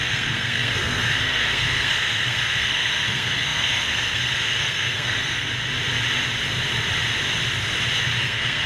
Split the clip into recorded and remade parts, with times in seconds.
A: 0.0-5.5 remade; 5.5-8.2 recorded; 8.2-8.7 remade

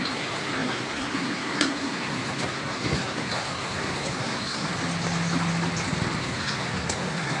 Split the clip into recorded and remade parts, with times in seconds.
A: 0.0-4.7 remade; 4.7-6.2 recorded; 6.2-7.4 remade